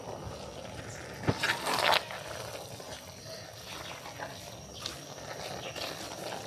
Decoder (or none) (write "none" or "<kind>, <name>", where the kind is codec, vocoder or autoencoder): none